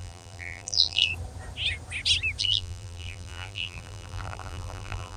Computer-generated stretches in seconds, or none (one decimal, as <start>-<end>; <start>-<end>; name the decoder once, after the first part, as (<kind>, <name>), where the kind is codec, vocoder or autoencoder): 0.0-1.1 (vocoder, BigVGAN v2); 2.4-5.2